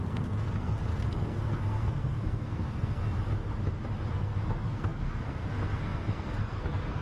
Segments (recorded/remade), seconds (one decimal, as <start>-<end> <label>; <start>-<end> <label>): 0.0-3.0 remade; 3.0-4.1 recorded; 4.1-7.0 remade